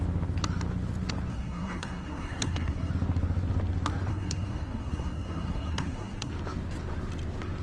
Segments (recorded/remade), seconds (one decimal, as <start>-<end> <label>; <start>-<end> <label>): 0.0-1.3 recorded; 1.3-2.9 remade; 2.9-4.1 recorded; 4.1-6.3 remade; 6.3-7.6 recorded